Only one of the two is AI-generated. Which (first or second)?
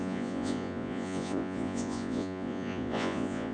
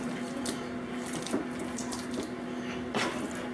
first